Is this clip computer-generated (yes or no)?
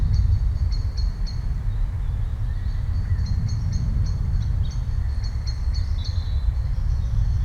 no